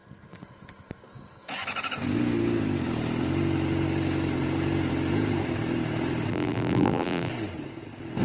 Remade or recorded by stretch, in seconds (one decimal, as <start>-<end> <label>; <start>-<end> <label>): 0.0-6.3 recorded; 6.3-7.3 remade; 7.3-8.2 recorded